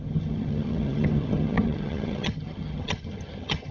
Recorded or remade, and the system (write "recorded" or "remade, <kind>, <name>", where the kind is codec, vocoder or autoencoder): remade, vocoder, HiFi-GAN